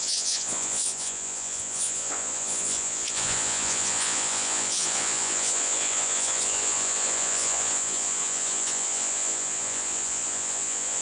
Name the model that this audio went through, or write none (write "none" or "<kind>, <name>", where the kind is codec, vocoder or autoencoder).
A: vocoder, Vocos